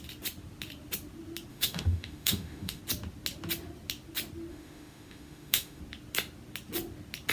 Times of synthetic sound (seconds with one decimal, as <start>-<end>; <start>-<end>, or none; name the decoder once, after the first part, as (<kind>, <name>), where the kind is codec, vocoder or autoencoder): 1.5-2.8 (autoencoder, DAC-VAE); 4.5-5.8